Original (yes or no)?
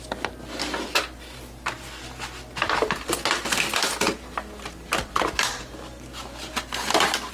yes